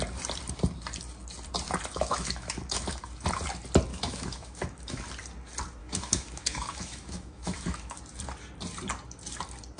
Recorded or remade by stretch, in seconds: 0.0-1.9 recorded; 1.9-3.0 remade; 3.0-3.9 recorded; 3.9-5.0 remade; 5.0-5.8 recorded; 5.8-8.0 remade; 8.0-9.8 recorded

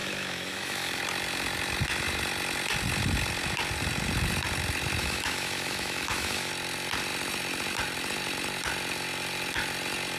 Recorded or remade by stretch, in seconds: 0.0-1.0 remade; 1.0-5.0 recorded; 5.0-6.5 remade; 6.5-10.2 recorded